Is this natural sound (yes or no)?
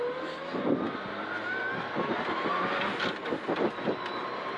yes